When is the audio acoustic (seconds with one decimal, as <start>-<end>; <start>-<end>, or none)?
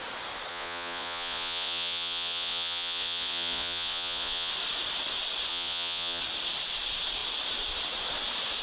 0.0-0.5; 4.5-5.5; 6.2-8.6